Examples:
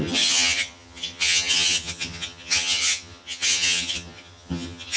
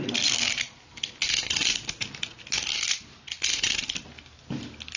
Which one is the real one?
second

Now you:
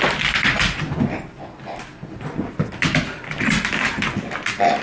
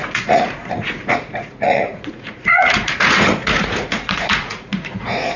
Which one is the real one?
first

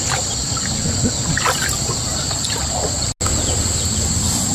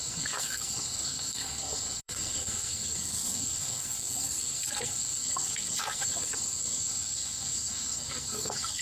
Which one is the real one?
first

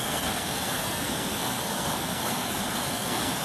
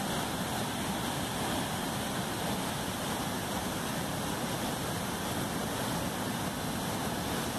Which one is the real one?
second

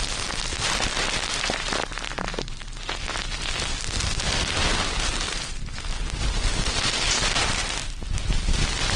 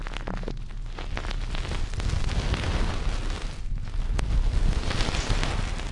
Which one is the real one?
second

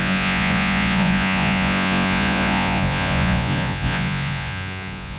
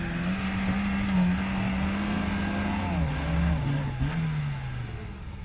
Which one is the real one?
second